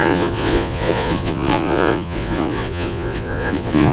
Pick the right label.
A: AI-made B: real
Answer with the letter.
A